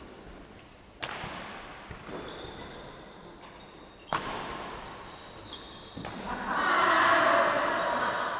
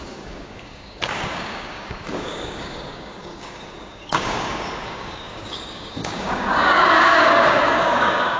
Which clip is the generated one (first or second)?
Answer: second